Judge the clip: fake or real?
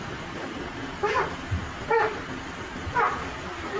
fake